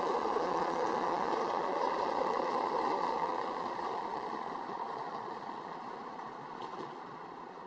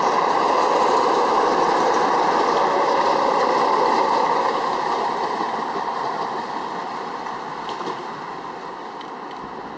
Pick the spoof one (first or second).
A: first